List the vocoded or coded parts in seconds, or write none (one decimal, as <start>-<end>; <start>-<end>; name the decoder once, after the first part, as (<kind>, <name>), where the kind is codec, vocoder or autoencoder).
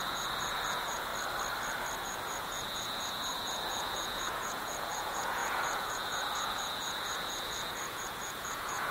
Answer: 0.0-1.1 (vocoder, Vocos); 2.0-8.9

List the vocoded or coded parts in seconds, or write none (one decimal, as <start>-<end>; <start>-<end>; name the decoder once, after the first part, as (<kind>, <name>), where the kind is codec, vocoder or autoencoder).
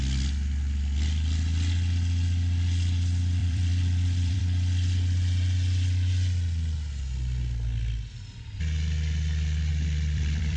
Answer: 3.4-4.4 (vocoder, BigVGAN v2); 9.7-10.6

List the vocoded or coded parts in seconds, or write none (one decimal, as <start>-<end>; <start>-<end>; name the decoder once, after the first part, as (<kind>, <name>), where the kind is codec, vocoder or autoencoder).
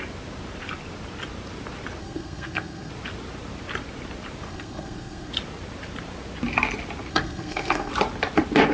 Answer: 2.0-2.9 (codec, SNAC); 4.5-5.3; 7.1-7.9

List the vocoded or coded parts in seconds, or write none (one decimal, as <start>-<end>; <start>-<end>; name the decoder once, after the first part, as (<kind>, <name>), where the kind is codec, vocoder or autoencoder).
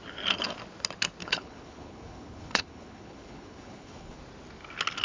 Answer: 1.2-4.2 (codec, HILCodec)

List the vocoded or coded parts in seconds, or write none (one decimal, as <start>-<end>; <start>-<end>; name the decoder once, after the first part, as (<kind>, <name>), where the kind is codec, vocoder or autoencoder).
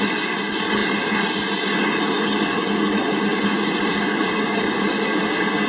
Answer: none